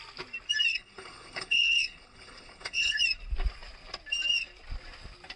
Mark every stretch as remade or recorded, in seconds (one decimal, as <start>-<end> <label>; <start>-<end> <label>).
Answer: 0.0-0.7 recorded; 0.7-3.0 remade; 3.0-5.4 recorded